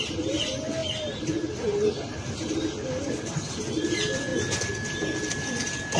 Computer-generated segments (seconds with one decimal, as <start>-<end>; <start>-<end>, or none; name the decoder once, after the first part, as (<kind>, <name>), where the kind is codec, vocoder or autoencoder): 0.0-4.3 (vocoder, BigVGAN v2); 5.3-6.0